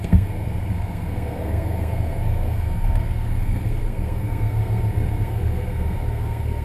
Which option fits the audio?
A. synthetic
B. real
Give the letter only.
A